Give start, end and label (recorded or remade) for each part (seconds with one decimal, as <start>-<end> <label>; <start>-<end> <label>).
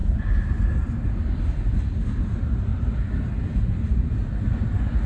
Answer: 0.0-5.1 recorded